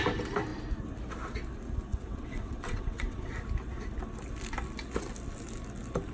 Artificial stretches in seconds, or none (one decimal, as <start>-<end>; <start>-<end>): 1.9-3.3